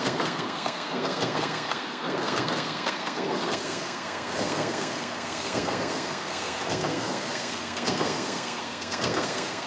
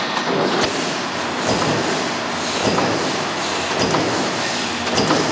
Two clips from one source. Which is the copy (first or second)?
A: first